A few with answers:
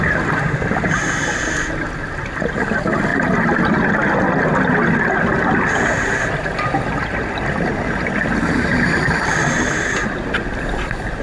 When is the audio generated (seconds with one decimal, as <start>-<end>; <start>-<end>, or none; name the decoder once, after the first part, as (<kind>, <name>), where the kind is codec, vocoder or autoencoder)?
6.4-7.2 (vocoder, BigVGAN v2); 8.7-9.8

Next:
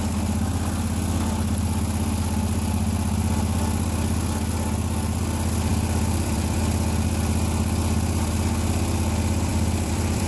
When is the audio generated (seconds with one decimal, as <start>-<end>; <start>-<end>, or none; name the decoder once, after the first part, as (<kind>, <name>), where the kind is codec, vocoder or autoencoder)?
5.7-6.6 (vocoder, BigVGAN v2); 9.5-10.3

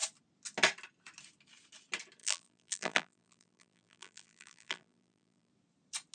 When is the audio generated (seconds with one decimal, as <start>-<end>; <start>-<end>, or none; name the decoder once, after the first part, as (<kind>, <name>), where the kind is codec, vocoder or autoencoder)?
2.2-5.5 (vocoder, BigVGAN v2)

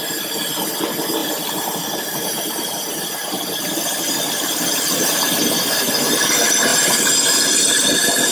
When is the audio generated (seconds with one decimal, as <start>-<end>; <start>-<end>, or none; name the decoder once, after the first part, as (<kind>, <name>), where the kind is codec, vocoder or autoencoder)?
1.2-5.3 (vocoder, BigVGAN v2)

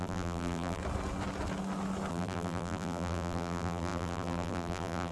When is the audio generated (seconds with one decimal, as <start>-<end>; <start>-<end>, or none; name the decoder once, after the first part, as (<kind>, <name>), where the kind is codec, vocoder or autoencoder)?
0.0-0.8 (vocoder, BigVGAN v2); 2.1-5.1

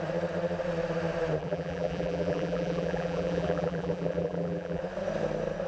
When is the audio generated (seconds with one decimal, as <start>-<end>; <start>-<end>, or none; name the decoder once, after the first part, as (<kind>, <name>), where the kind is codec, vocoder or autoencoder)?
1.4-4.8 (vocoder, BigVGAN v2)

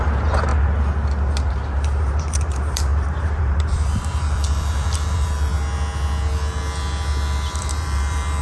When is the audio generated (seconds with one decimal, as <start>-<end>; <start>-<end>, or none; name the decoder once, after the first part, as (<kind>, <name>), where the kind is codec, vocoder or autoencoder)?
0.0-0.5 (vocoder, BigVGAN v2); 1.5-5.5; 7.6-8.4

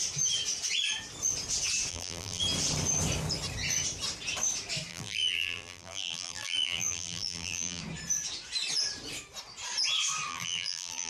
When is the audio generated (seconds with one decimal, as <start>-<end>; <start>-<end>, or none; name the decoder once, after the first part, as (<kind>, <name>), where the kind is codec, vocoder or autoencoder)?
1.9-2.4 (vocoder, BigVGAN v2); 4.9-7.8; 10.3-11.1